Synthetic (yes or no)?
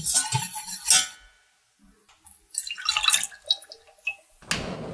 no